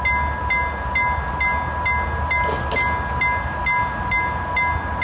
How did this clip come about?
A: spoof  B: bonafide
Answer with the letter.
B